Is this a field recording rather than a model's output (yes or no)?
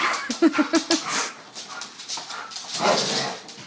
yes